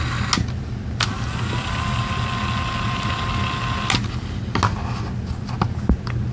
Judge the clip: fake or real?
real